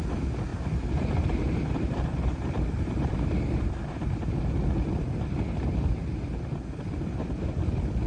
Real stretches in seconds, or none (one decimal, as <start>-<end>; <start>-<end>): 0.0-0.5; 3.1-8.1